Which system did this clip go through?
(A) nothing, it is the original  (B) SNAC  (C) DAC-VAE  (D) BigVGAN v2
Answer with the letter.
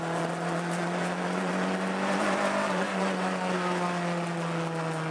A